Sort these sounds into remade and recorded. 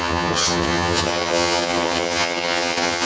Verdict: remade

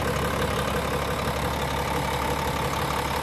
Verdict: recorded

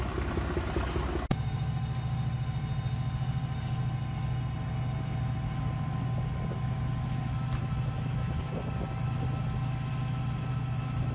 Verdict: recorded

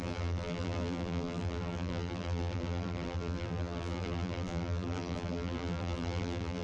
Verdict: remade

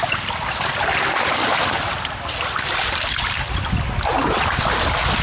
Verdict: recorded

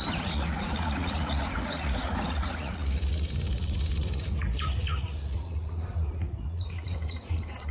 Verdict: remade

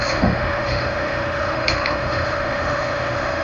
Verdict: remade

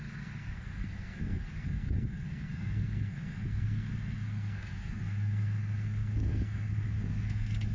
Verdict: remade